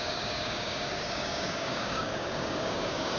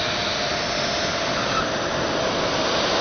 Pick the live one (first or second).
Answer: second